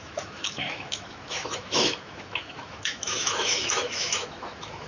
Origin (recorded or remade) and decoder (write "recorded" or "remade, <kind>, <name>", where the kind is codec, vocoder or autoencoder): remade, autoencoder, DAC-VAE